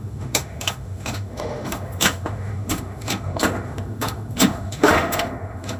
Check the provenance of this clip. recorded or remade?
remade